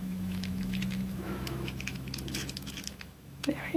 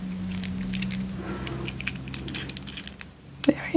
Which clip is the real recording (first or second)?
second